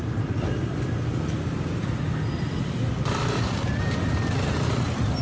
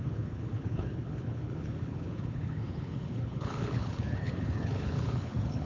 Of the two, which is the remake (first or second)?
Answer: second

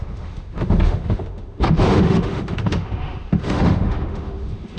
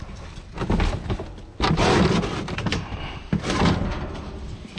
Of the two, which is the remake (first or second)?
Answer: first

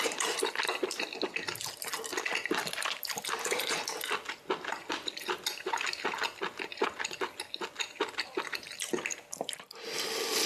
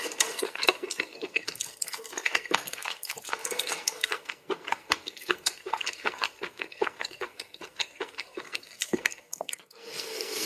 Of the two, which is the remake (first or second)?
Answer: second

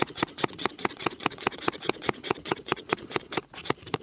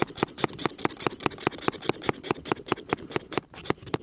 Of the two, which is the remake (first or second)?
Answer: first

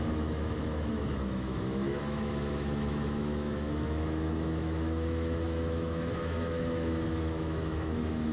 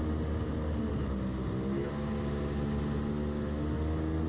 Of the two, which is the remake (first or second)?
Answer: first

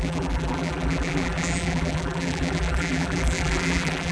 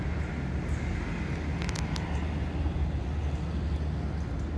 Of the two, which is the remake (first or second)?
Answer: first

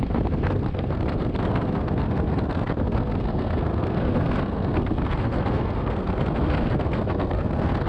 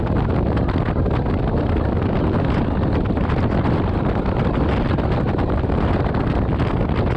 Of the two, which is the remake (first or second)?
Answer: first